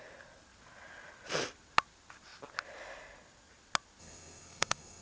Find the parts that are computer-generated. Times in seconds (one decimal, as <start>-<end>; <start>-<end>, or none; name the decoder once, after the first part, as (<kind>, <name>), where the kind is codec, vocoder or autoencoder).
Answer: 4.0-5.0 (codec, SNAC)